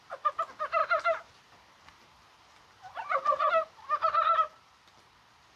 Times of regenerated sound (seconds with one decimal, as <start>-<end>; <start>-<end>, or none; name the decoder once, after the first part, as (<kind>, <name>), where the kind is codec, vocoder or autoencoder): none